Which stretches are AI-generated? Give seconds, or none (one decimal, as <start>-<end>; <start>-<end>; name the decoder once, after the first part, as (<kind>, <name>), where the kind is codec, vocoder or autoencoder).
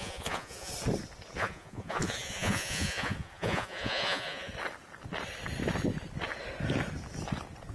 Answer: 0.0-0.7 (vocoder, Vocos); 1.4-4.5